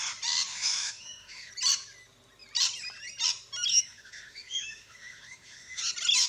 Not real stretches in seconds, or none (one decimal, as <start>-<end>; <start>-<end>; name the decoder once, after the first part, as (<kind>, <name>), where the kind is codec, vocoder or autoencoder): 0.5-1.5 (autoencoder, DAC-VAE); 3.7-5.8